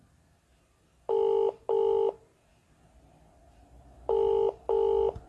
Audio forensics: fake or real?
real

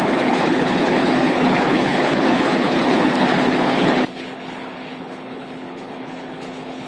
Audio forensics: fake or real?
fake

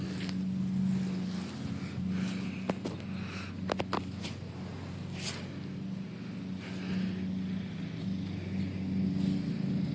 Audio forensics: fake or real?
real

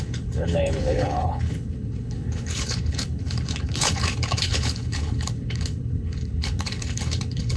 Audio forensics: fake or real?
fake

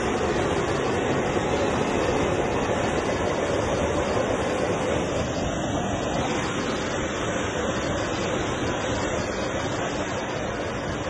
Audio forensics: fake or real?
real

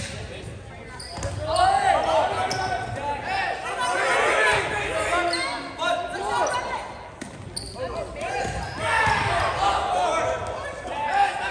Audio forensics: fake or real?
real